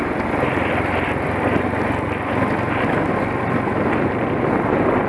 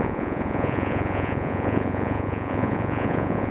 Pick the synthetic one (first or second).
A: second